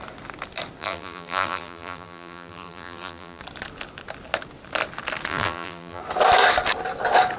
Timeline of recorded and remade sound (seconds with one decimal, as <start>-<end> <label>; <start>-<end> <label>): 0.0-0.8 recorded; 0.8-3.4 remade; 3.4-5.3 recorded; 5.3-6.0 remade; 6.0-7.4 recorded